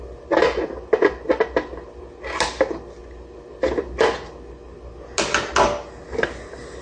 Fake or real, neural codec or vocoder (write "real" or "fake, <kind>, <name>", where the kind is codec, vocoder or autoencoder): real